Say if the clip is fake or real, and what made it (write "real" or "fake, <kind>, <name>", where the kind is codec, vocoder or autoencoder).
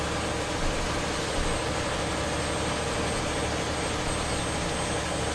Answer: real